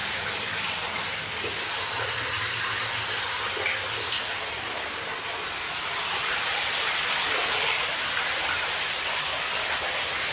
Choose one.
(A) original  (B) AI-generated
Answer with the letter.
A